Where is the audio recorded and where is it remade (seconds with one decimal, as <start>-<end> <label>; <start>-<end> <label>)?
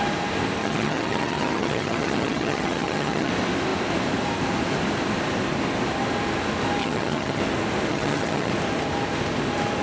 0.0-0.6 recorded; 0.6-3.3 remade; 3.3-6.8 recorded; 6.8-7.4 remade; 7.4-7.9 recorded; 7.9-8.5 remade; 8.5-9.8 recorded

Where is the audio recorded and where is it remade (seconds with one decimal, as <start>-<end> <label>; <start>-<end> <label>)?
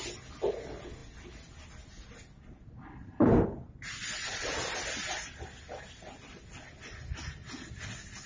0.0-8.3 recorded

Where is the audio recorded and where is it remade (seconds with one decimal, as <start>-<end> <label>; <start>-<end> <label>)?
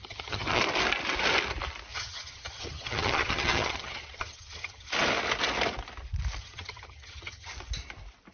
0.0-0.6 remade; 0.6-1.9 recorded; 1.9-4.9 remade; 4.9-6.4 recorded; 6.4-7.5 remade; 7.5-8.3 recorded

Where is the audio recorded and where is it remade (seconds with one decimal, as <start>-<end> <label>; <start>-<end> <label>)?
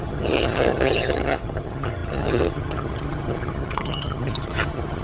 0.0-5.0 remade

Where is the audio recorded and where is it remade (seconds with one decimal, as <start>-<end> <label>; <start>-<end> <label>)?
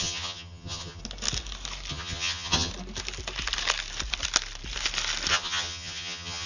0.0-1.0 remade; 1.0-1.9 recorded; 1.9-2.7 remade; 2.7-5.3 recorded; 5.3-6.5 remade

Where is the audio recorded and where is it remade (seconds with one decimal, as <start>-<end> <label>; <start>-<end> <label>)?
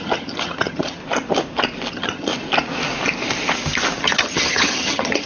0.0-1.0 remade; 1.0-1.9 recorded; 1.9-2.3 remade; 2.3-4.0 recorded; 4.0-5.3 remade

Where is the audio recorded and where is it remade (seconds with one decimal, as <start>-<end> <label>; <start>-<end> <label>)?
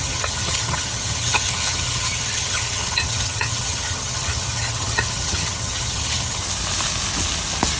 0.0-6.4 remade; 6.4-7.8 recorded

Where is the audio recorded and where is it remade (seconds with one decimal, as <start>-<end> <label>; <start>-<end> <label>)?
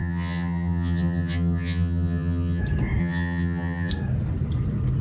0.0-2.6 remade; 2.6-3.0 recorded; 3.0-3.9 remade; 3.9-5.0 recorded